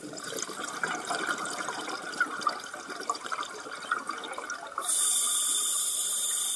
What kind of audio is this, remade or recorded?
recorded